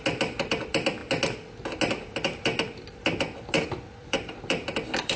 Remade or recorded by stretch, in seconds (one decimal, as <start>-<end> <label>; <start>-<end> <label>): 0.0-4.0 recorded; 4.0-5.2 remade